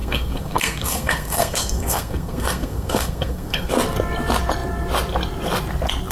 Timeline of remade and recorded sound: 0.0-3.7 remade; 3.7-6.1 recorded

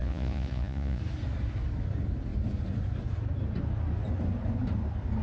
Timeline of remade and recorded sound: 0.0-1.0 remade; 1.0-5.2 recorded